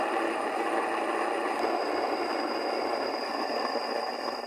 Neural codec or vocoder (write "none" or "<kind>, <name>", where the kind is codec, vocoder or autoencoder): none